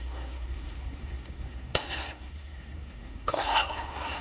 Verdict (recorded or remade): remade